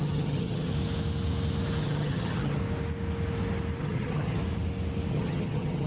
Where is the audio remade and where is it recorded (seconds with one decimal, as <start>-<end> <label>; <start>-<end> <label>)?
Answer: 0.0-0.7 remade; 0.7-1.8 recorded; 1.8-2.6 remade; 2.6-3.8 recorded; 3.8-4.4 remade; 4.4-5.1 recorded; 5.1-5.9 remade